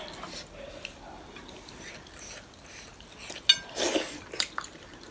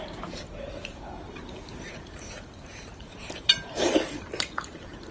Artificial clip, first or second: second